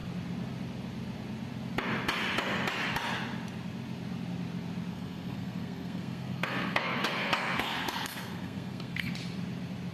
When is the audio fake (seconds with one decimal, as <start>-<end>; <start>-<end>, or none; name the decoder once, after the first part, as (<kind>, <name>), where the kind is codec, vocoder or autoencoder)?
4.9-9.1 (codec, SNAC)